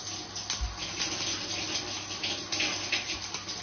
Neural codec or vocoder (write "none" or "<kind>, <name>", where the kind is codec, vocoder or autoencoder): none